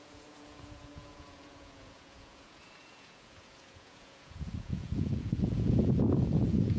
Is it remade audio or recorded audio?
remade